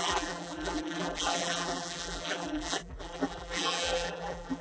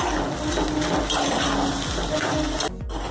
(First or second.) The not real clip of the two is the first